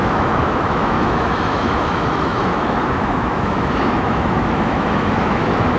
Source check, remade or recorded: remade